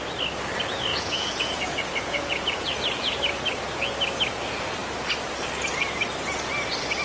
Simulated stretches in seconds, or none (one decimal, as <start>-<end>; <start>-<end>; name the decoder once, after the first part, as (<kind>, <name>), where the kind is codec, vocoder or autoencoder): 0.9-2.7 (vocoder, Vocos)